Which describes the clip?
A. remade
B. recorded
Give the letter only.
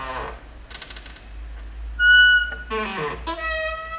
B